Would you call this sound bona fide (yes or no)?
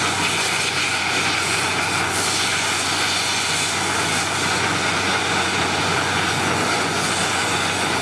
no